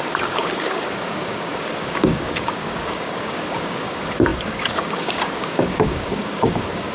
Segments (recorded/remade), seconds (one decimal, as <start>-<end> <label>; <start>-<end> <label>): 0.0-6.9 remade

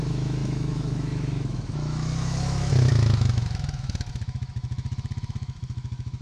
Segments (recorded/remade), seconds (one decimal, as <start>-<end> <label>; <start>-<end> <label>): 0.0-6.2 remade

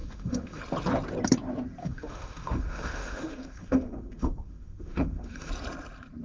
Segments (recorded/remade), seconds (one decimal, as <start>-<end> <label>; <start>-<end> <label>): 0.0-0.6 remade; 0.6-1.8 recorded; 1.8-5.5 remade; 5.5-6.2 recorded

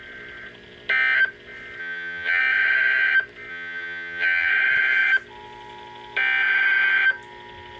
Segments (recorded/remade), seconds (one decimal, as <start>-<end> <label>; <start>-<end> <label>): 0.0-1.8 recorded; 1.8-2.4 remade; 2.4-3.5 recorded; 3.5-4.5 remade; 4.5-7.8 recorded

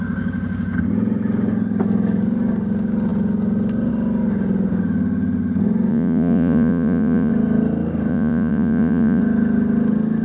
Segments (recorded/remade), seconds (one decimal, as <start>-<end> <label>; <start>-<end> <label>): 0.0-5.9 recorded; 5.9-7.3 remade; 7.3-8.1 recorded; 8.1-9.2 remade; 9.2-10.2 recorded

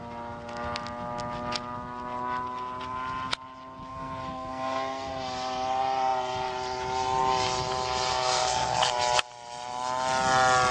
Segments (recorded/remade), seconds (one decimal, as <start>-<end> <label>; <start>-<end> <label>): 0.0-3.9 recorded; 3.9-5.1 remade; 5.1-8.1 recorded; 8.1-8.9 remade; 8.9-10.7 recorded

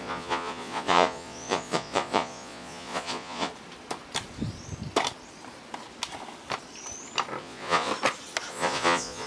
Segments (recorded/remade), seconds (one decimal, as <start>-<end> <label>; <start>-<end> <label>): 0.0-3.5 remade; 3.5-7.4 recorded; 7.4-7.9 remade; 7.9-8.5 recorded; 8.5-9.3 remade

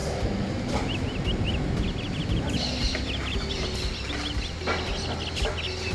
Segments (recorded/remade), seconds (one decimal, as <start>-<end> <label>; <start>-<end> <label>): 0.0-5.9 recorded